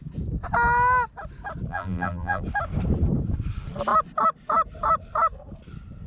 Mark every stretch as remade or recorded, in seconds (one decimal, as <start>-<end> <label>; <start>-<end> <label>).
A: 0.0-1.7 recorded; 1.7-2.4 remade; 2.4-6.1 recorded